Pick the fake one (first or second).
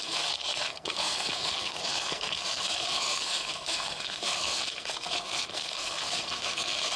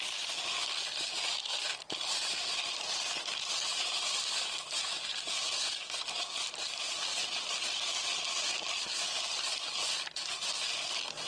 first